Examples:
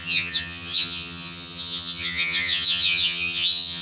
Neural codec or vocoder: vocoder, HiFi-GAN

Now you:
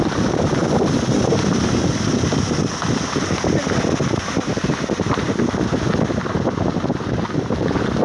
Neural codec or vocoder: none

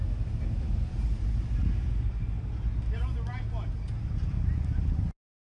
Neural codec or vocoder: none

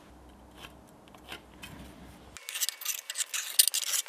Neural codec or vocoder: none